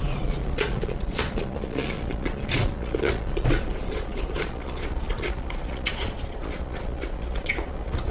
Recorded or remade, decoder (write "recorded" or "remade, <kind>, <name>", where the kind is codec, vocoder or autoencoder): remade, vocoder, Vocos